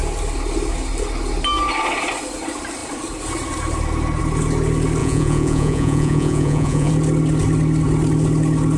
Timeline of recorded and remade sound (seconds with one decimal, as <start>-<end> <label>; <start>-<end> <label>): 0.0-5.0 recorded; 5.0-6.9 remade; 6.9-8.8 recorded